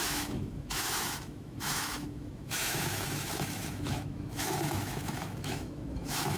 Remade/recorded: remade